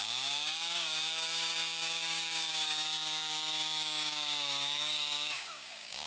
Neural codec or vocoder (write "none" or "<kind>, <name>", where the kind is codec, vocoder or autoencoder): codec, DAC